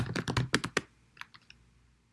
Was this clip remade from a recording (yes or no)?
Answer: no